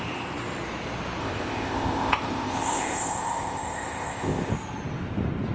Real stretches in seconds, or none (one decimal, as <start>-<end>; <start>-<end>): 0.0-1.2; 4.5-5.5